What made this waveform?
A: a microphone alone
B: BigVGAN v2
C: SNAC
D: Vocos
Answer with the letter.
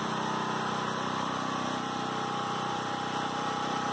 B